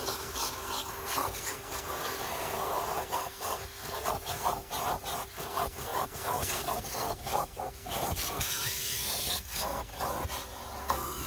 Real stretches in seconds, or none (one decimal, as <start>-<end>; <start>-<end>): 4.7-5.3; 9.9-10.8